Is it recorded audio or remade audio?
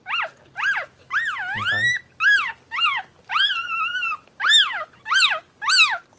recorded